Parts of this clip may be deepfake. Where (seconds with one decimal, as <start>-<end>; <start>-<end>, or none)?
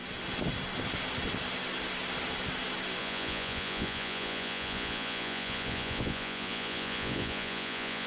3.0-8.1